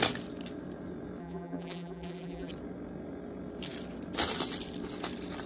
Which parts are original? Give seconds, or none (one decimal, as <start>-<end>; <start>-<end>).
0.0-1.2; 2.5-5.5